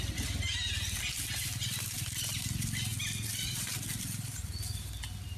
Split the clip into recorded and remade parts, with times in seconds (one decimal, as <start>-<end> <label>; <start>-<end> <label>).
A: 0.0-5.4 recorded